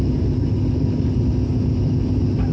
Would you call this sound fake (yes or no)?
no